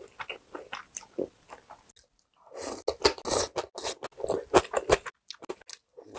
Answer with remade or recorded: recorded